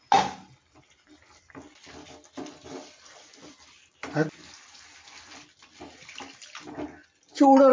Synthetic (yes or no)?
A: no